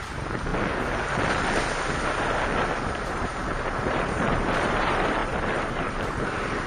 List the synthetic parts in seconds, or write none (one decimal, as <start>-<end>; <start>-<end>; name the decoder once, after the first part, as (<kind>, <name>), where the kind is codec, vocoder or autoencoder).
0.0-0.5 (vocoder, BigVGAN v2); 3.1-6.7